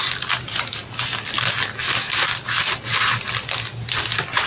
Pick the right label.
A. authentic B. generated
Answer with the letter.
A